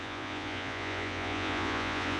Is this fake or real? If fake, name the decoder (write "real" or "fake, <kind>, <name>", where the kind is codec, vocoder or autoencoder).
fake, vocoder, Vocos